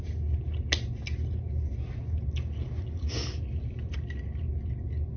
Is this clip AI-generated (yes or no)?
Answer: no